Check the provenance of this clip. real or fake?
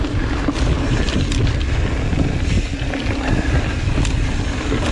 real